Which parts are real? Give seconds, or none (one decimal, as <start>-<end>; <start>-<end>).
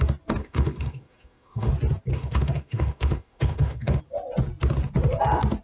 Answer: 0.0-0.4; 1.7-2.1; 4.0-5.6